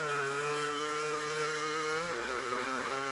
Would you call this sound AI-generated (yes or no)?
yes